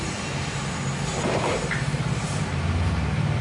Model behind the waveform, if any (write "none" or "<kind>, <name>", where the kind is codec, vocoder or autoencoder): none